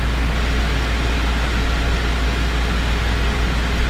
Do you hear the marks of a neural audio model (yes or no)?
no